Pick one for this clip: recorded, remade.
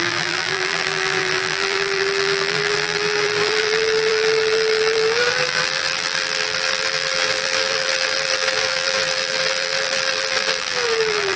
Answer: remade